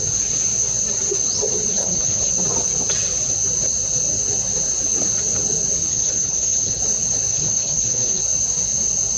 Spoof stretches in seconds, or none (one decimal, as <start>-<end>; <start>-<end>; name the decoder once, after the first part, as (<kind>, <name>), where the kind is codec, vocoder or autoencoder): 1.7-2.3 (codec, HILCodec); 5.9-6.8; 7.3-8.2